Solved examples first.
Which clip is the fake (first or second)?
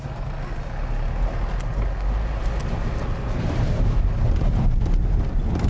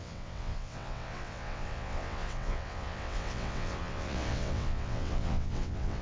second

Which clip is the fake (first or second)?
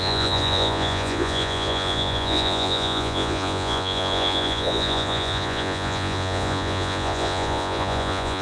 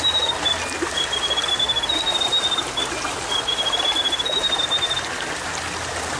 first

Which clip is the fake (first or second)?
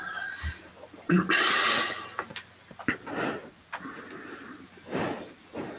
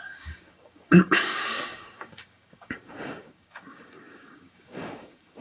second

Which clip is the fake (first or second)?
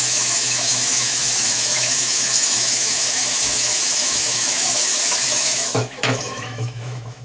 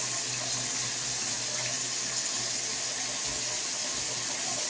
first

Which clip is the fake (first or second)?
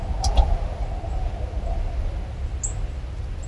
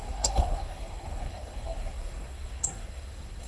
second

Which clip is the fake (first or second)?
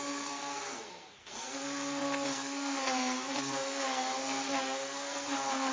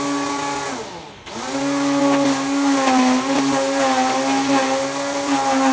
first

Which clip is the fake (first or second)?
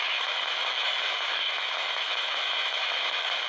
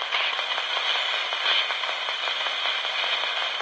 first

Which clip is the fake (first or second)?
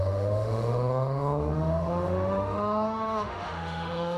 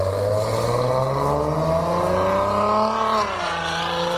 first